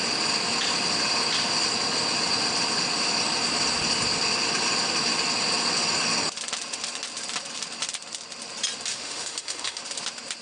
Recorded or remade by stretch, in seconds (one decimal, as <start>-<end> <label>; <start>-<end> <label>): 0.0-8.9 recorded; 8.9-9.8 remade; 9.8-10.4 recorded